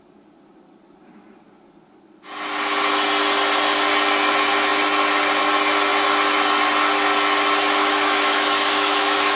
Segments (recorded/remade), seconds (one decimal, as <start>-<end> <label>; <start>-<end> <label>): 0.0-7.8 recorded; 7.8-9.4 remade